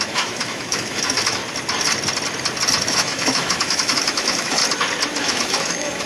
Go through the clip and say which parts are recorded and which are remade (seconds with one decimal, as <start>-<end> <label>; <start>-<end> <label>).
0.0-1.4 remade; 1.4-2.8 recorded; 2.8-4.6 remade; 4.6-5.2 recorded; 5.2-6.1 remade